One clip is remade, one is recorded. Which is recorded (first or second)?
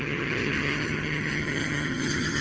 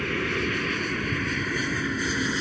second